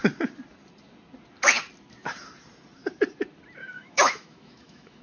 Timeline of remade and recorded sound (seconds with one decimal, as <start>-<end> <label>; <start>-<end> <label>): 0.0-3.6 recorded; 3.6-5.0 remade